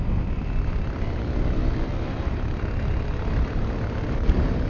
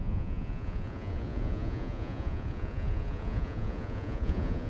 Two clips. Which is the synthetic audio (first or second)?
second